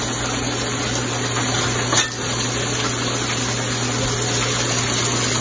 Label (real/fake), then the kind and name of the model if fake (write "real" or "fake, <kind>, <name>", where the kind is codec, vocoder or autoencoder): real